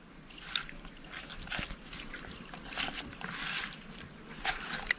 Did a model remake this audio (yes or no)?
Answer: no